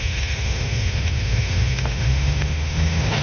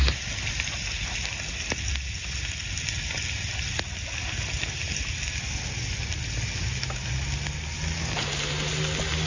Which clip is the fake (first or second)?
first